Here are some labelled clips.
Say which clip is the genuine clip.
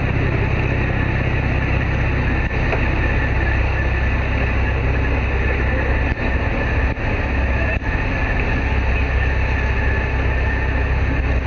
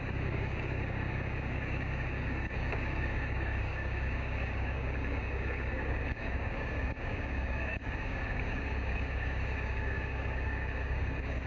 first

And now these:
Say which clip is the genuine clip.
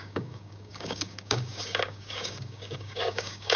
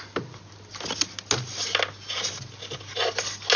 second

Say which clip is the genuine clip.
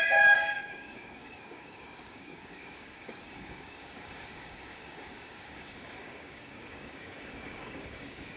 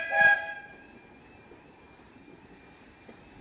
second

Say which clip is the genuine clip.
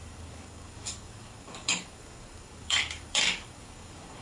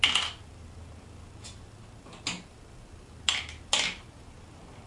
second